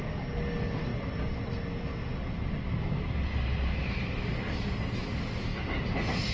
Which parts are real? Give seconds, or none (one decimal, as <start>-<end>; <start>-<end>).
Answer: 0.0-6.3